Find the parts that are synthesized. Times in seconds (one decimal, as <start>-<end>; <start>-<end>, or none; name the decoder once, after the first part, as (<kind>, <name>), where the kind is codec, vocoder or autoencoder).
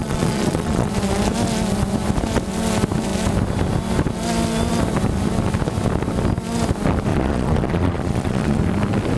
0.0-0.9 (vocoder, Vocos); 7.1-8.6